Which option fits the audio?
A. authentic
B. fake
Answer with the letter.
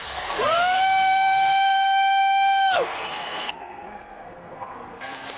B